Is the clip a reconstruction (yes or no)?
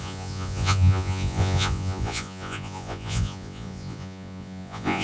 yes